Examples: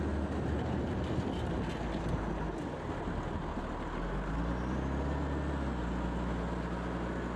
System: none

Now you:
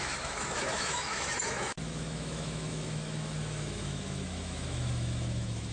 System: autoencoder, DAC-VAE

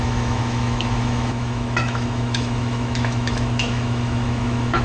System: autoencoder, DAC-VAE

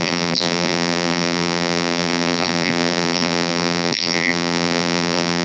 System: vocoder, BigVGAN v2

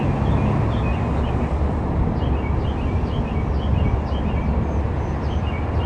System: none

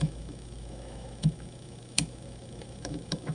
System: autoencoder, DAC-VAE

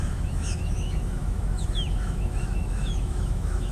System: autoencoder, DAC-VAE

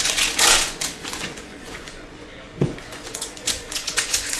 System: vocoder, Vocos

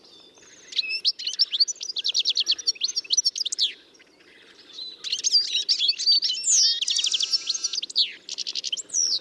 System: none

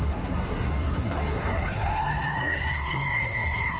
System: codec, SNAC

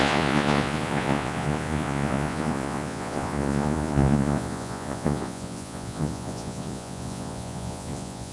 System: vocoder, Vocos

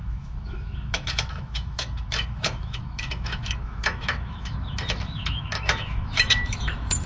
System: autoencoder, DAC-VAE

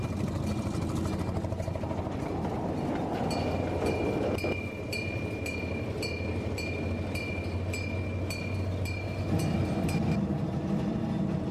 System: none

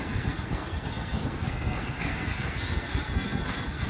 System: codec, SNAC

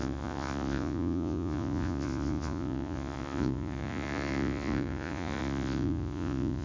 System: vocoder, Vocos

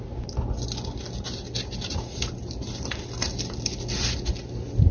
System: none